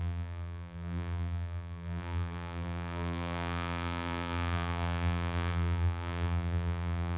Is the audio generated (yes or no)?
yes